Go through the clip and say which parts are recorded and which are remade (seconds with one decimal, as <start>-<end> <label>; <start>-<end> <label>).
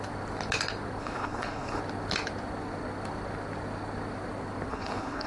0.0-1.0 recorded; 1.0-1.8 remade; 1.8-4.7 recorded; 4.7-5.3 remade